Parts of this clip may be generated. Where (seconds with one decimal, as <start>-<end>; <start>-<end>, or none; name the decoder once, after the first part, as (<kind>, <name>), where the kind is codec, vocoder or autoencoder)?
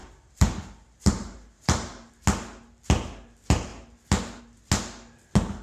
0.0-2.1 (vocoder, BigVGAN v2)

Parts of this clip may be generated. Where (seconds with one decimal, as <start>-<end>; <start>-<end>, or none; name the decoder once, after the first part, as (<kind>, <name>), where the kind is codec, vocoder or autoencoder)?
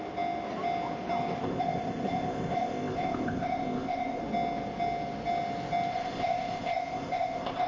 1.4-4.2 (codec, ZipCodec); 5.9-7.7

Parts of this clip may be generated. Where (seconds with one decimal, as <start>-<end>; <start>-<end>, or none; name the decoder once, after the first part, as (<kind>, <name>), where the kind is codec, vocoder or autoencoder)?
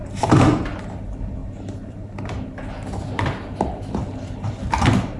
0.0-0.9 (vocoder, BigVGAN v2); 1.4-2.6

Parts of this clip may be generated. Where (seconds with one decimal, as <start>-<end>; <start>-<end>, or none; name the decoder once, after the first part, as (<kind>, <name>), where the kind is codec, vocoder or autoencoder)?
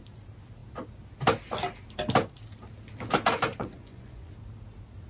3.5-4.3 (vocoder, Vocos)